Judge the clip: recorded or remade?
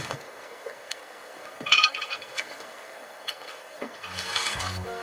remade